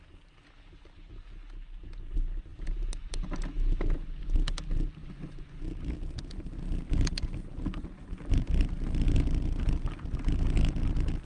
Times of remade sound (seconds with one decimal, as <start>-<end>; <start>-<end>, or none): 5.0-5.6